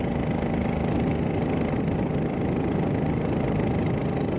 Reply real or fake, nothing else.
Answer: real